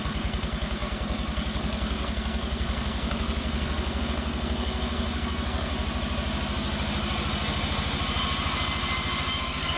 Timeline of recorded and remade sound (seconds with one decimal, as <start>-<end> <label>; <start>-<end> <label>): 0.0-5.7 remade; 5.7-9.4 recorded; 9.4-9.8 remade